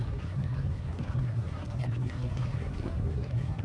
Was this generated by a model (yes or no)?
yes